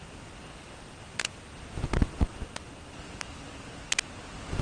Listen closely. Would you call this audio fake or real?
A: real